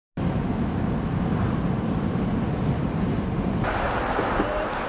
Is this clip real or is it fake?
real